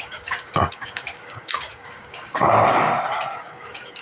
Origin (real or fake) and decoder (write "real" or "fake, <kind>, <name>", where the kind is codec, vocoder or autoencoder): fake, codec, DAC